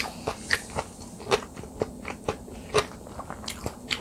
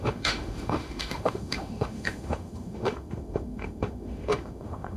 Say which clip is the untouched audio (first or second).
first